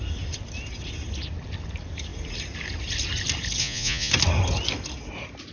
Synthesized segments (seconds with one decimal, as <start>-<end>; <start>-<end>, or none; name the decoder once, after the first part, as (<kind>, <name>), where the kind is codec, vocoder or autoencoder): 3.6-4.1 (vocoder, Vocos)